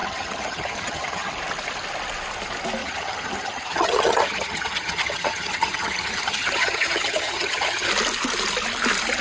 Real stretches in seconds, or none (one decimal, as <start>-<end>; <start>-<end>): 1.3-2.8; 7.9-9.2